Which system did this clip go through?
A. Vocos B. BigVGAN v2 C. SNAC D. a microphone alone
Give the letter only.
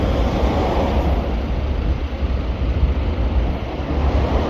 D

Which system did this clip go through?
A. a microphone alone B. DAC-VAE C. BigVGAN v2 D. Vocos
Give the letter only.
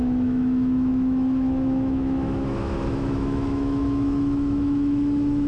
B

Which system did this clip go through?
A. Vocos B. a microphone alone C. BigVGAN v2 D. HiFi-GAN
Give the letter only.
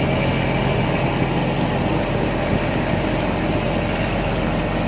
B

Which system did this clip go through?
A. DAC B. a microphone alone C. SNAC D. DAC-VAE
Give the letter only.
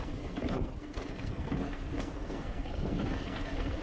C